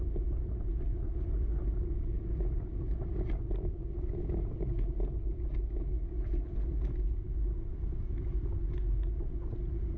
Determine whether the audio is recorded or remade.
recorded